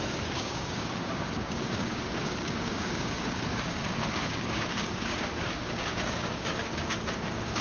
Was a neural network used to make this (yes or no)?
yes